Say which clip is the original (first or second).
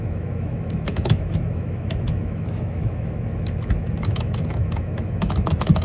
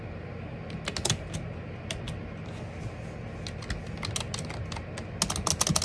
second